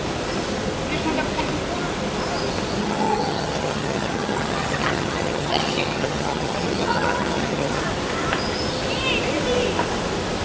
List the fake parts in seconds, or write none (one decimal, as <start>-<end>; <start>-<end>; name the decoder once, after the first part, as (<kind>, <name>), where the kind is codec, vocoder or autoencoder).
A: 2.8-7.8 (vocoder, HiFi-GAN)